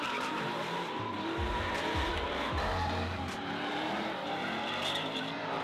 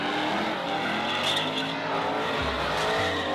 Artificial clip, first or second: first